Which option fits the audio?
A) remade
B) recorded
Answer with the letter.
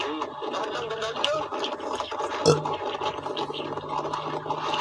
B